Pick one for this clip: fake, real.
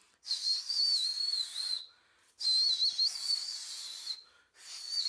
real